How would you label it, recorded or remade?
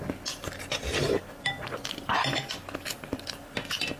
recorded